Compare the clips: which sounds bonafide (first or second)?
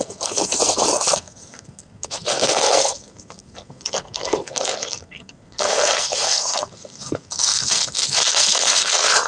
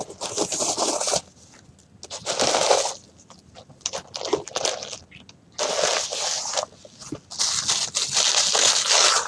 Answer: second